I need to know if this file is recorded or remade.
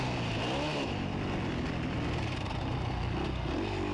recorded